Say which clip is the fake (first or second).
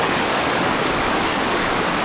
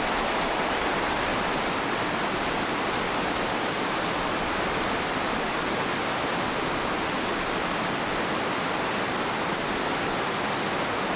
first